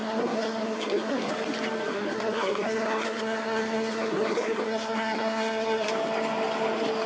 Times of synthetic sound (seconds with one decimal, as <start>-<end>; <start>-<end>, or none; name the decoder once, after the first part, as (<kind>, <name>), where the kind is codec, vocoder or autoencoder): 0.0-1.3 (codec, SNAC); 1.9-5.9